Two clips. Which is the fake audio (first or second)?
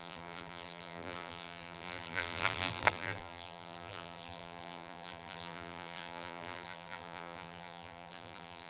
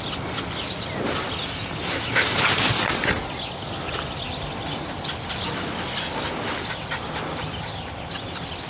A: first